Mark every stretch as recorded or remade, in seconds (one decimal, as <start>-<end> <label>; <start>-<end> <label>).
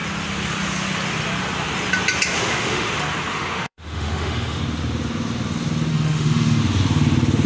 0.0-2.3 recorded; 2.3-2.9 remade; 2.9-3.3 recorded; 3.3-4.6 remade; 4.6-5.9 recorded; 5.9-6.6 remade; 6.6-7.5 recorded